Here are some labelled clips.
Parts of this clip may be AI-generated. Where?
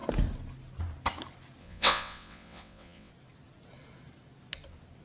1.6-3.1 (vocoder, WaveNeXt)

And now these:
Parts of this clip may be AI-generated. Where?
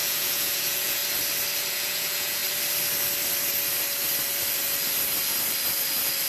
0.0-1.0 (vocoder, Vocos); 1.7-2.4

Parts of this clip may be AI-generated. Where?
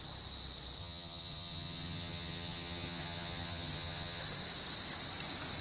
0.8-4.2 (vocoder, HiFi-GAN)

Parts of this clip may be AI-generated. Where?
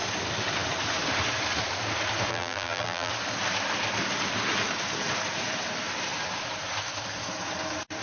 2.3-3.1 (vocoder, BigVGAN v2)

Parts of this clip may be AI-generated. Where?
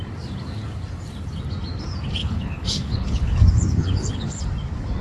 2.2-3.4 (codec, HILCodec); 3.8-4.4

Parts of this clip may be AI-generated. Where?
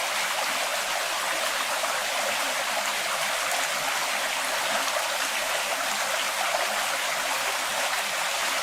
2.0-3.4 (vocoder, BigVGAN v2); 7.4-8.6